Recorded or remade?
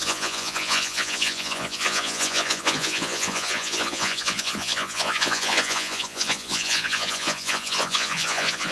remade